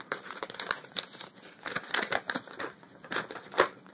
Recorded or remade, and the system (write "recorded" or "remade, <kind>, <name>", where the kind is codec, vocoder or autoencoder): remade, vocoder, BigVGAN v2